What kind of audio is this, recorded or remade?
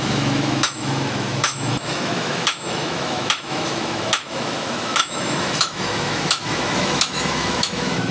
remade